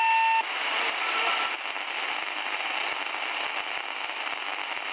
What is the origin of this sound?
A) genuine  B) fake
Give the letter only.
A